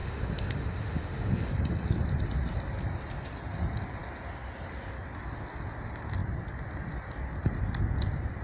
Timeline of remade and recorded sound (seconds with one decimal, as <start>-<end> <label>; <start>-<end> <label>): 0.0-1.5 remade; 1.5-8.4 recorded